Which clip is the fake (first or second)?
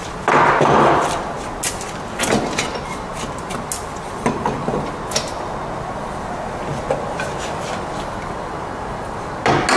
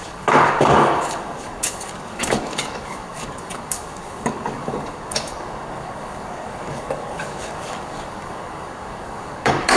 second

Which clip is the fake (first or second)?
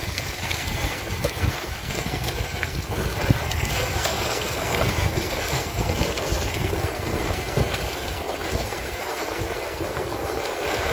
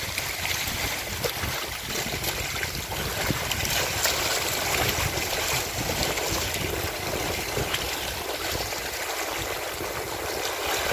first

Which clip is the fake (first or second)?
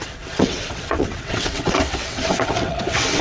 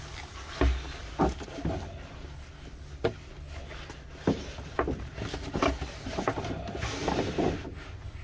first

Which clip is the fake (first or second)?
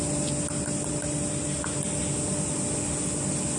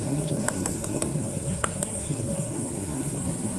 second